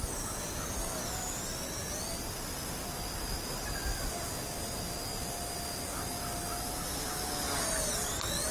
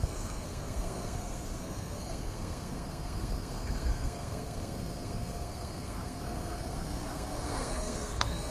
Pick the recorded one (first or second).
first